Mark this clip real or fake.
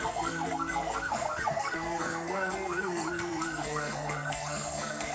fake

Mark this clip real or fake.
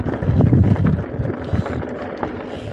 real